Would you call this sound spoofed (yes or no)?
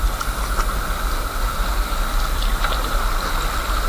no